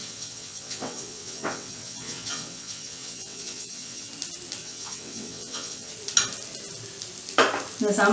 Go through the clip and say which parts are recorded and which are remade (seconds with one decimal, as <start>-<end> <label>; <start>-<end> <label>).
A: 0.0-4.1 remade; 4.1-4.6 recorded; 4.6-5.9 remade; 5.9-8.1 recorded